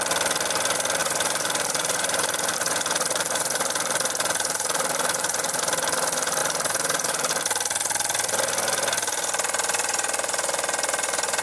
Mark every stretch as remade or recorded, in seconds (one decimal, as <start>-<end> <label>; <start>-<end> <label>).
0.0-1.0 recorded; 1.0-5.6 remade; 5.6-6.4 recorded; 6.4-7.3 remade; 7.3-11.4 recorded